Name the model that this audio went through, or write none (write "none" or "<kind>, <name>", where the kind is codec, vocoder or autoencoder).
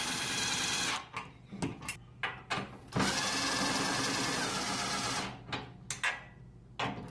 none